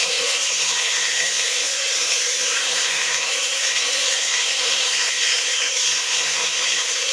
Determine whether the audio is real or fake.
fake